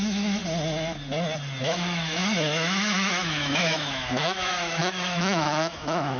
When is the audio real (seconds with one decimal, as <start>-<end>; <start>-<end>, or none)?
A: 0.4-1.6